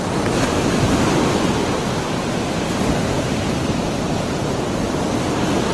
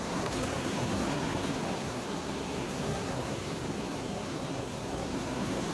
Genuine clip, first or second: first